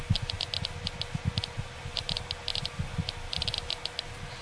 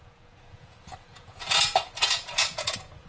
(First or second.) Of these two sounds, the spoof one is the second